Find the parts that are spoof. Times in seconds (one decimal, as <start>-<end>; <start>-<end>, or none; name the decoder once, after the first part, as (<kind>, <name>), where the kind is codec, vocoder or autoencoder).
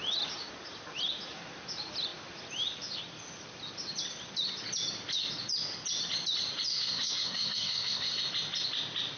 6.7-8.2 (codec, SNAC)